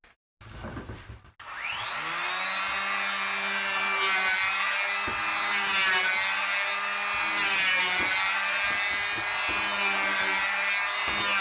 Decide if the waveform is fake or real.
real